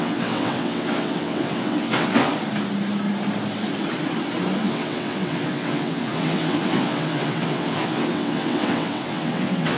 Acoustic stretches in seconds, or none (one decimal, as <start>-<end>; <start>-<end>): 2.3-4.6